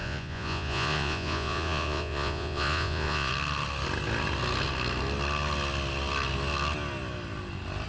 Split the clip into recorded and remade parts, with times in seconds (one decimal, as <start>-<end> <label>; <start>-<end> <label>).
0.0-3.3 remade; 3.3-7.9 recorded